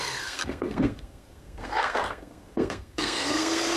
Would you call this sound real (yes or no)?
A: no